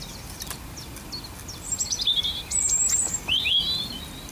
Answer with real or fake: real